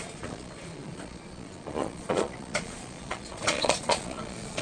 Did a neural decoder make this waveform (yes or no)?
yes